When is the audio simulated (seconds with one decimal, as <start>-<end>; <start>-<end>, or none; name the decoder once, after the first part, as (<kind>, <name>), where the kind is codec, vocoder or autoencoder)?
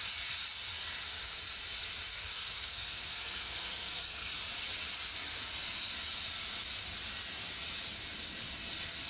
2.1-4.4 (codec, SNAC)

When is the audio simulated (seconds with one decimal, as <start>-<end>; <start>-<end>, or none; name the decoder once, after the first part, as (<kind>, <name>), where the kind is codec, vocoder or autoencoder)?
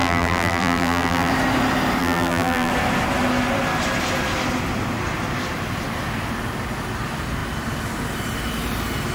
0.0-1.3 (vocoder, BigVGAN v2); 2.0-2.7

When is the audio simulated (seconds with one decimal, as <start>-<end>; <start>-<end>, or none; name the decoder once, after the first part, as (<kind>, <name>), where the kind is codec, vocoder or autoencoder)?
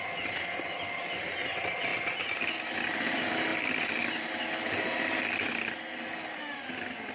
none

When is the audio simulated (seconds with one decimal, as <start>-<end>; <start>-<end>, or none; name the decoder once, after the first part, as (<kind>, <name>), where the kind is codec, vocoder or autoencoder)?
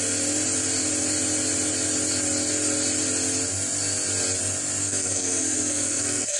4.8-6.4 (codec, SNAC)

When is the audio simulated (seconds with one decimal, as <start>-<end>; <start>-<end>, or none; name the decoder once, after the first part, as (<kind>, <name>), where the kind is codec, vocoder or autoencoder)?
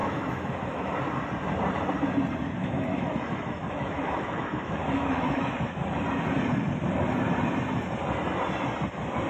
0.0-1.0 (autoencoder, DAC-VAE); 2.6-6.0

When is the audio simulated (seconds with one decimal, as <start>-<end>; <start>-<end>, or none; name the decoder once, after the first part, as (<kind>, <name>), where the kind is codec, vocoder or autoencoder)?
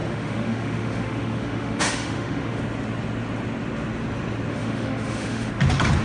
0.0-2.6 (autoencoder, DAC-VAE); 4.5-5.5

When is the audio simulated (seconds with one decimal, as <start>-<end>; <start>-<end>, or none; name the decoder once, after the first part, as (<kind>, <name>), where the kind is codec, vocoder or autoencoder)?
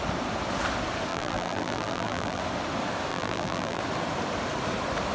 1.1-2.4 (vocoder, BigVGAN v2); 3.1-3.8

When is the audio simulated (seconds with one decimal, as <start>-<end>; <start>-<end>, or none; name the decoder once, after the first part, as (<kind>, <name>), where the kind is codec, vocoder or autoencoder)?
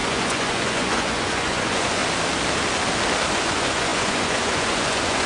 0.0-2.0 (vocoder, Vocos); 3.3-5.3